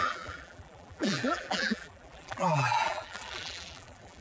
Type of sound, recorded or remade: remade